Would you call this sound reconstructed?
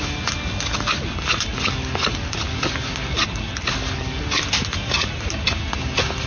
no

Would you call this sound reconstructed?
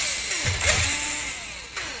no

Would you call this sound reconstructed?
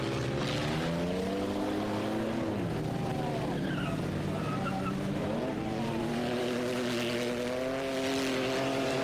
no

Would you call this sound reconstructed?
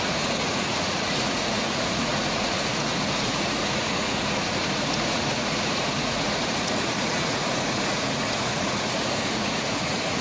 yes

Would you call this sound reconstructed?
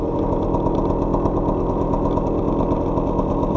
no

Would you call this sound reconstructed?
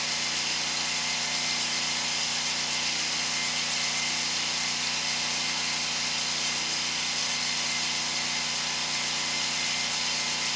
no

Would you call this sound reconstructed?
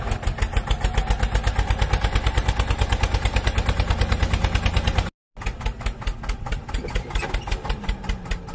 no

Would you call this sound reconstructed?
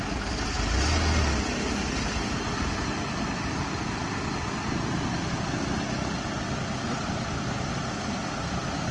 no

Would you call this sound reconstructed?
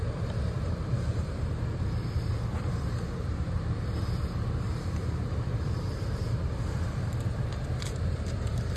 yes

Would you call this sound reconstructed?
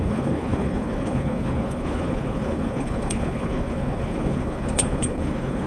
yes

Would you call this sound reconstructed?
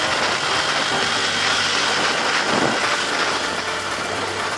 no